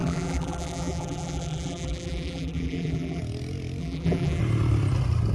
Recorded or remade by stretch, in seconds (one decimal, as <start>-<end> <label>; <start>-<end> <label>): 0.0-3.2 remade; 3.2-3.8 recorded; 3.8-4.4 remade; 4.4-5.3 recorded